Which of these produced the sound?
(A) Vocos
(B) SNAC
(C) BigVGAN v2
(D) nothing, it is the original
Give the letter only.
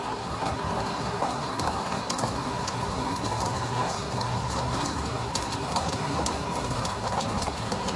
B